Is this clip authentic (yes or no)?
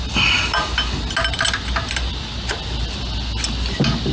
yes